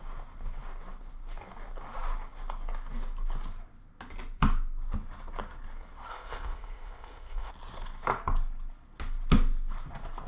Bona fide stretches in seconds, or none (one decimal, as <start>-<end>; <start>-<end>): 0.0-6.1; 7.5-10.3